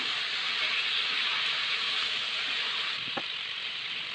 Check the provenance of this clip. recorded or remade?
recorded